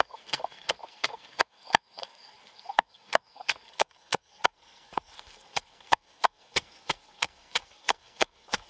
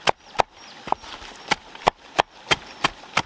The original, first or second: second